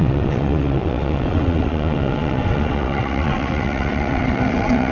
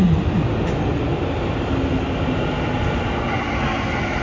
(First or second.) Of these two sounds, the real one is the second